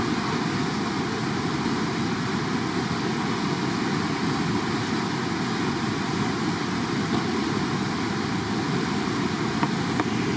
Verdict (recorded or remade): recorded